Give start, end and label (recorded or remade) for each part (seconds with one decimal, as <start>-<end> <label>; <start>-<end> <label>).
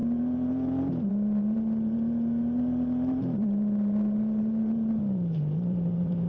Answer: 0.0-6.3 remade